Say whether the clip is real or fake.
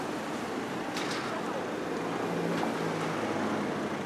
real